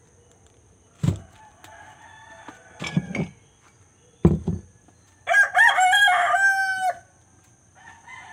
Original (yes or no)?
yes